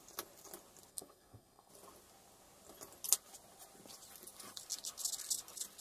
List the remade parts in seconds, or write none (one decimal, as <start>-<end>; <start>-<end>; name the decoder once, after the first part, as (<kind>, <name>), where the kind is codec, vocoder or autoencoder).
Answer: 0.9-1.7 (codec, SNAC)